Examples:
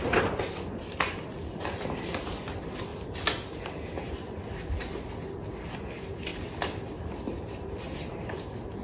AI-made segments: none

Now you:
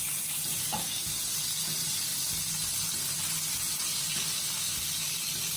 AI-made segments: none